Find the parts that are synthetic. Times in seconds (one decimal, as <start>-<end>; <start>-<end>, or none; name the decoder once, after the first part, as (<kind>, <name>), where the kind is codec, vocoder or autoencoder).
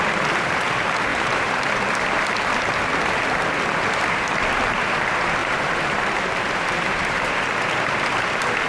1.1-1.7 (vocoder, BigVGAN v2); 5.4-7.3